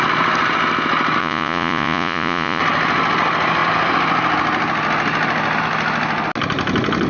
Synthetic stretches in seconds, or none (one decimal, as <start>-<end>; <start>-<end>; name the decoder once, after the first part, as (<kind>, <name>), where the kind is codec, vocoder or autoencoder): 1.2-2.6 (vocoder, Vocos)